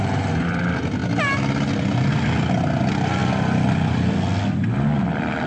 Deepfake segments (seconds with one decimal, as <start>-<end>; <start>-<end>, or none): none